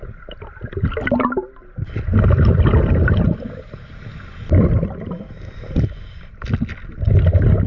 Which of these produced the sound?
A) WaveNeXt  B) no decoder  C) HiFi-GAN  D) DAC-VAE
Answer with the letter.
B